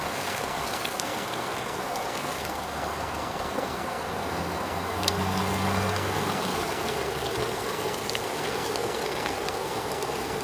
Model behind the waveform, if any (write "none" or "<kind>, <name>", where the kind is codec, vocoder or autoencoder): codec, SNAC